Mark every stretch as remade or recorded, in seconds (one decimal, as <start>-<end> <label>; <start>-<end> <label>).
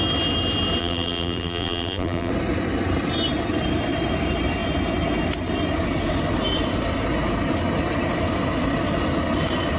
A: 0.0-0.8 recorded; 0.8-2.3 remade; 2.3-9.8 recorded